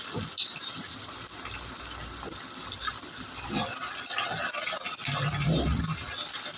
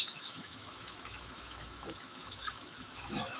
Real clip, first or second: first